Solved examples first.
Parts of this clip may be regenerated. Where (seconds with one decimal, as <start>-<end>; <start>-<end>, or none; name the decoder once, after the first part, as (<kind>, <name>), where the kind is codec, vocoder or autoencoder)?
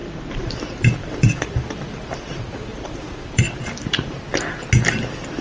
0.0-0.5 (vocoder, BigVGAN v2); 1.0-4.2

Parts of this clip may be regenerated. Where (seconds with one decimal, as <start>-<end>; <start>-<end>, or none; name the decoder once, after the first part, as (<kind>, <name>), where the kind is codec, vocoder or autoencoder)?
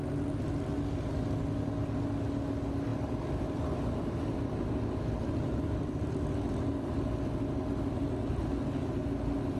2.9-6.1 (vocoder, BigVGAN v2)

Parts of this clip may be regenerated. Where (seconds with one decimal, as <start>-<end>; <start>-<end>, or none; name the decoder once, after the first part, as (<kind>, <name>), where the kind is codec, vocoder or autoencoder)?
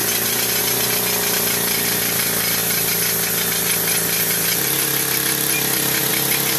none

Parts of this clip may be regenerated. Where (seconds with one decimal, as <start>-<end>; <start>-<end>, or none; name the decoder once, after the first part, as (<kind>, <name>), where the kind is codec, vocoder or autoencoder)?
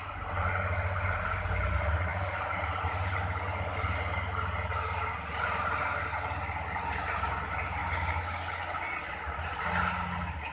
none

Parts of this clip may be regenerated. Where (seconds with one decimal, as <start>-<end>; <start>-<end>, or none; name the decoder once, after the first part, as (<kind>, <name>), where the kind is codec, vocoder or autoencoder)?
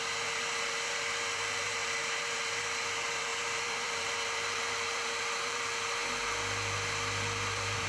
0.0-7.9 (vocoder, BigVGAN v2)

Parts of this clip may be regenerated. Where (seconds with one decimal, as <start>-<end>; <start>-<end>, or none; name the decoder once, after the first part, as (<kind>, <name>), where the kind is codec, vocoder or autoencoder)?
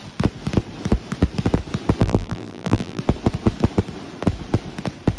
2.0-3.0 (vocoder, BigVGAN v2)